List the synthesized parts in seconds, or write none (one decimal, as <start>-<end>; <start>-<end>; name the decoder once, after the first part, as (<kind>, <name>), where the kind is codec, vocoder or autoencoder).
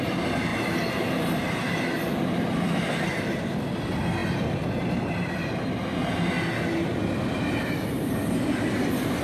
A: none